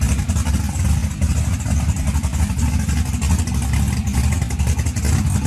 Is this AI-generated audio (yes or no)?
no